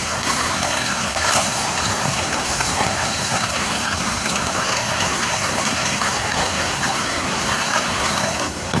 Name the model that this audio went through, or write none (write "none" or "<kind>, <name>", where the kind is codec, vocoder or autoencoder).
codec, SNAC